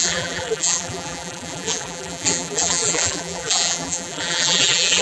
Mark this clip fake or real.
fake